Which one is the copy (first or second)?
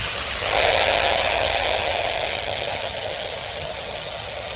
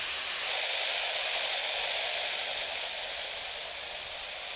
first